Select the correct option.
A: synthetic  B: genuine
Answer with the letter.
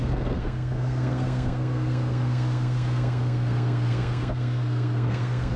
A